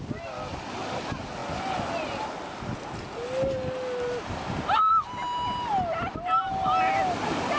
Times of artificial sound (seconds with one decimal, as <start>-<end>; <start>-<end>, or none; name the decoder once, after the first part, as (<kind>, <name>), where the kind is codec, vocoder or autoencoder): none